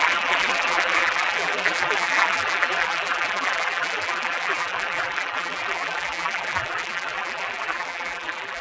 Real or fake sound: fake